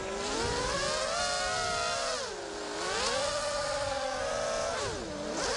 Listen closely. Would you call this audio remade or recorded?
recorded